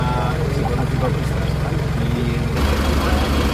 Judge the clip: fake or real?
real